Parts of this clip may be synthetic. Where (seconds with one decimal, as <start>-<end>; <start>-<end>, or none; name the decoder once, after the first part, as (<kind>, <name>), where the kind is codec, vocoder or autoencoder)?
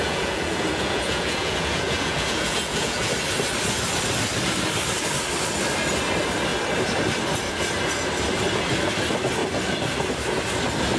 0.0-3.1 (vocoder, Vocos)